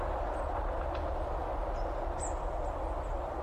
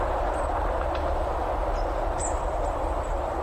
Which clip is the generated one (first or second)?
second